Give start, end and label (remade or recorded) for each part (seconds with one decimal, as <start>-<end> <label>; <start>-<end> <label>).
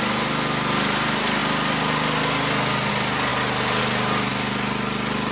0.0-5.3 recorded